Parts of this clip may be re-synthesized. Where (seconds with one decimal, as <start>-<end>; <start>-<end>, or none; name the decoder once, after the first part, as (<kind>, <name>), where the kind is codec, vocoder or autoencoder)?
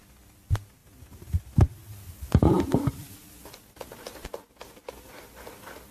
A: none